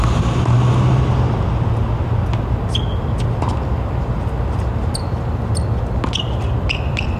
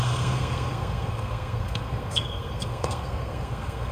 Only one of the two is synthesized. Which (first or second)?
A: second